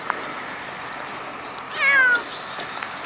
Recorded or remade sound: recorded